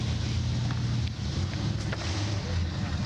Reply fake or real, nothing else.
real